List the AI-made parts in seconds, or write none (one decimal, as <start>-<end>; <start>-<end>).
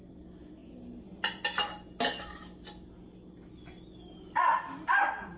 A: none